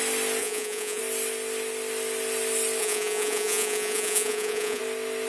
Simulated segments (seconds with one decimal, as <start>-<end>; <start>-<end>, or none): 0.4-1.0; 2.8-4.8